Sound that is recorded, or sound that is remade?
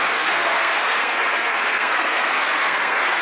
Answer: remade